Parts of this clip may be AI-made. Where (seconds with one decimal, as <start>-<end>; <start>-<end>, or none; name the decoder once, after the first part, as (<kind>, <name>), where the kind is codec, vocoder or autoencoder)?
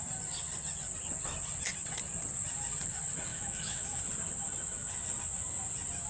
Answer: 3.3-4.0 (autoencoder, DAC-VAE)